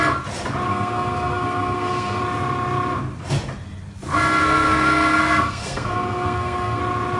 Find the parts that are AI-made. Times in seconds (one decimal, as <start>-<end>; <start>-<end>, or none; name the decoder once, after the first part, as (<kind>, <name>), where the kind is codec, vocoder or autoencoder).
0.7-2.2 (codec, SNAC); 4.4-6.8

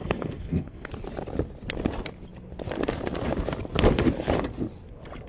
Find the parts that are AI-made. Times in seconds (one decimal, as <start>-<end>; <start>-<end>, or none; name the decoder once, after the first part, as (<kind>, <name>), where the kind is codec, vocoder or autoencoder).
0.0-0.9 (codec, SNAC)

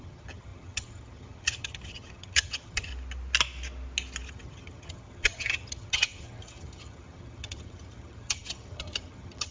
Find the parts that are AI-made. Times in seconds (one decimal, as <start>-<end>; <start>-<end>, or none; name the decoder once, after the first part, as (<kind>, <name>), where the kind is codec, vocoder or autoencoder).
0.0-2.9 (vocoder, HiFi-GAN); 4.3-9.5

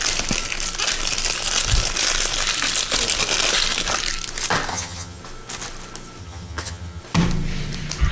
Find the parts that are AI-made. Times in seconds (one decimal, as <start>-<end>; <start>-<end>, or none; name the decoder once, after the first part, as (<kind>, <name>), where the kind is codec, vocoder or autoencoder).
4.7-5.2 (vocoder, HiFi-GAN); 6.2-7.0

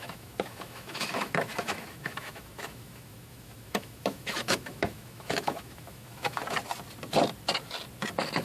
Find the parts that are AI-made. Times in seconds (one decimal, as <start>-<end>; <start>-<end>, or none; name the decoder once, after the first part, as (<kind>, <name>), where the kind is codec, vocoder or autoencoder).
0.0-6.4 (autoencoder, DAC-VAE)

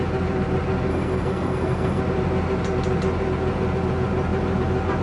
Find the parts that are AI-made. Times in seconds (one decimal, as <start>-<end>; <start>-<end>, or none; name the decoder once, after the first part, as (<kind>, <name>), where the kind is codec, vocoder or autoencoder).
0.9-2.0 (codec, SNAC)